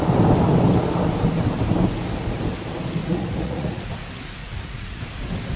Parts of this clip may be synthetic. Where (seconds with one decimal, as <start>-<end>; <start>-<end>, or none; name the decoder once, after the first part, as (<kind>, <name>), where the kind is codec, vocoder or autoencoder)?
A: 3.0-3.9 (vocoder, Vocos); 4.4-5.0